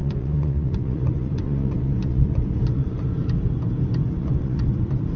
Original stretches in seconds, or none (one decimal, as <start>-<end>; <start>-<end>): 3.1-4.2; 4.8-5.2

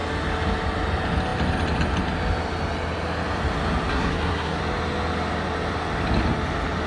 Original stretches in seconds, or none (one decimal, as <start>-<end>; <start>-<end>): 0.0-3.9; 4.6-6.9

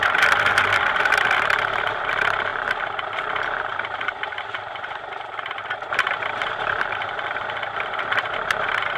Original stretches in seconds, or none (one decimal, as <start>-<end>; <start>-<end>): none

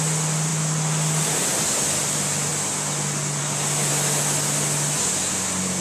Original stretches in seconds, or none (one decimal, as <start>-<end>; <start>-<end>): 0.0-5.8

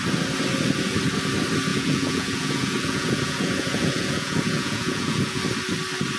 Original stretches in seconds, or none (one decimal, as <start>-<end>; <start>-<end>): 0.0-1.7; 5.4-6.2